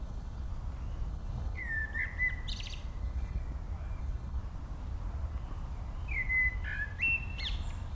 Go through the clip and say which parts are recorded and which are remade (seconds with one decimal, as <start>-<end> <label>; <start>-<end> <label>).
0.0-0.5 remade; 0.5-1.1 recorded; 1.1-1.6 remade; 1.6-3.0 recorded; 3.0-3.4 remade; 3.4-4.0 recorded; 4.0-4.4 remade; 4.4-7.9 recorded